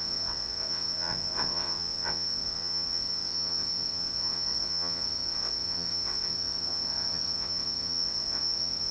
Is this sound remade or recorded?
remade